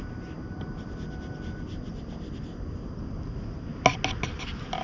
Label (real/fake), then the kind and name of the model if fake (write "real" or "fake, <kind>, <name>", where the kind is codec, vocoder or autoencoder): real